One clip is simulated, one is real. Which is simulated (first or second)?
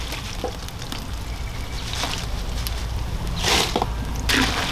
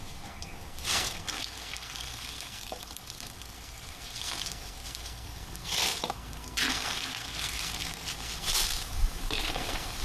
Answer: second